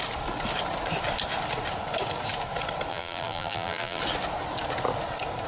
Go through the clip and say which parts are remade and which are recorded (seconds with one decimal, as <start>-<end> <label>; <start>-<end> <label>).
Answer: 0.0-2.9 recorded; 2.9-4.0 remade; 4.0-5.5 recorded

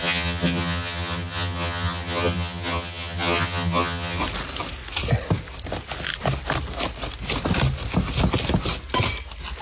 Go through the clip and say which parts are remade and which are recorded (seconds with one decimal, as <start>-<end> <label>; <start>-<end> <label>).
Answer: 0.0-4.2 remade; 4.2-9.6 recorded